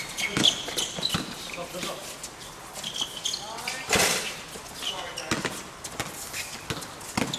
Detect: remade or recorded recorded